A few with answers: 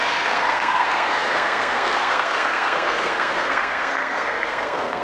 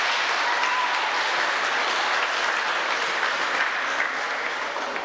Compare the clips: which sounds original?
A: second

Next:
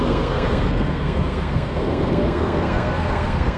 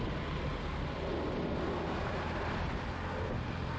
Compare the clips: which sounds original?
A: second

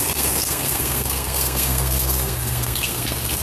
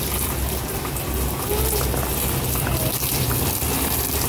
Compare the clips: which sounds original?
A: second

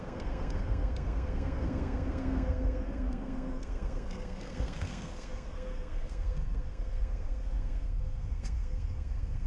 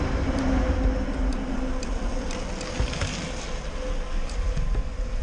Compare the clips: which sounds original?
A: second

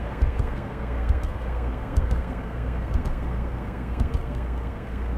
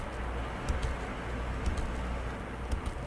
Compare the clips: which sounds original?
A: second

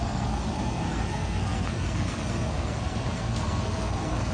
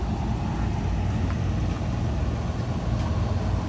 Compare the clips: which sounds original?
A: second